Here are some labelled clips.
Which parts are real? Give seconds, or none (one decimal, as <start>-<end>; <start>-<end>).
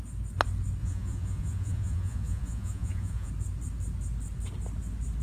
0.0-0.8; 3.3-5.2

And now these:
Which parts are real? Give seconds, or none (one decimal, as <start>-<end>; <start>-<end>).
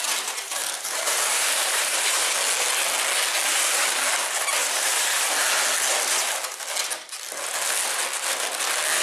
0.0-0.6; 2.3-4.6; 5.2-9.0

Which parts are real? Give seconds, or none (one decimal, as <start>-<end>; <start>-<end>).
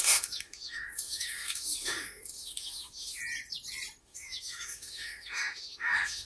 3.2-4.0